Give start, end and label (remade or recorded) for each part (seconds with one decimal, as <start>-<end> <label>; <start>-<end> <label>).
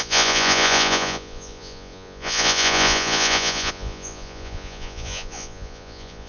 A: 0.0-6.3 remade